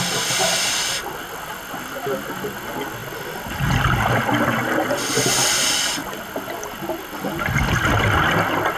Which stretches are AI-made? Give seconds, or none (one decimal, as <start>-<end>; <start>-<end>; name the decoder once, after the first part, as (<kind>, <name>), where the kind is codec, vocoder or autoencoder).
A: none